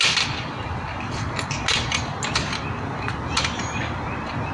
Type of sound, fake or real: real